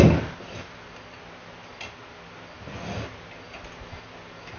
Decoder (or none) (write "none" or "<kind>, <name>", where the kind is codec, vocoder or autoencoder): none